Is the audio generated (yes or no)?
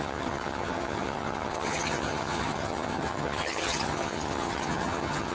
yes